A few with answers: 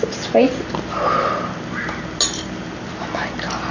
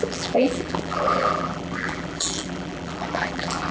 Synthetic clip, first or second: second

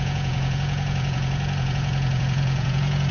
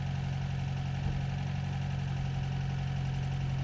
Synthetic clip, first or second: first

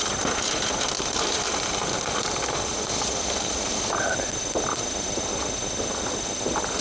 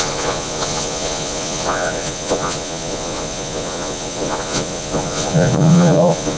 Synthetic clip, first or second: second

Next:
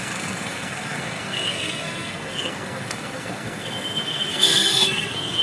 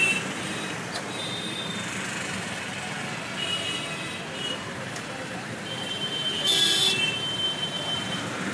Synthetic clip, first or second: first